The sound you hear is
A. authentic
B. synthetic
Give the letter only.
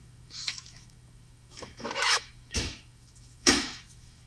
B